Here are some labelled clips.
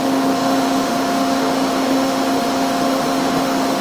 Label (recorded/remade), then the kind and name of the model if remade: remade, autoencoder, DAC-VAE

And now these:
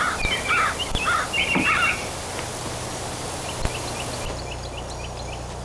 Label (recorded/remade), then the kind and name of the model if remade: recorded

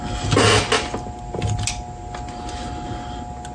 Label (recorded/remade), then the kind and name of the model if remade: recorded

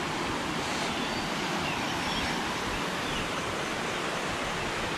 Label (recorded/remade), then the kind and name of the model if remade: recorded